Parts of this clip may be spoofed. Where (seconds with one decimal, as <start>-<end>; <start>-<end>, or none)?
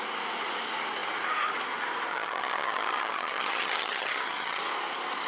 2.1-4.6